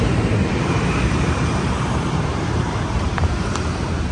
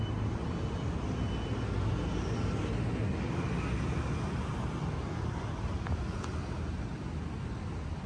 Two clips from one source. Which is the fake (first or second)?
first